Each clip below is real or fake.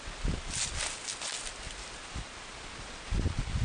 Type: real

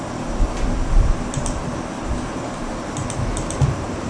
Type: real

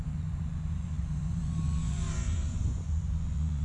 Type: fake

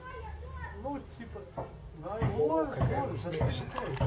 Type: real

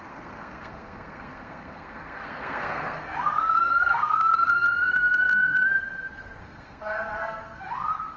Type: fake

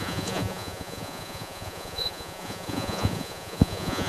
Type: fake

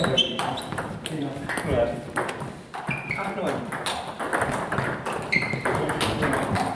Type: real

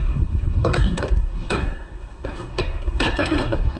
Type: fake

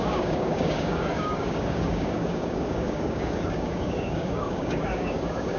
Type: fake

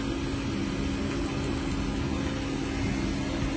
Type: real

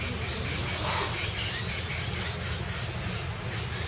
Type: real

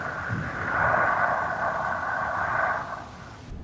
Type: real